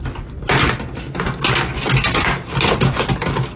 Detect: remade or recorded recorded